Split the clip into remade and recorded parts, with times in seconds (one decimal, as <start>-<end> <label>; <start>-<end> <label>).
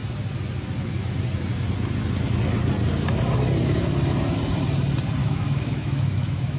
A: 0.0-5.2 recorded; 5.2-6.6 remade